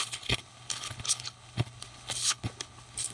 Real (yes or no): no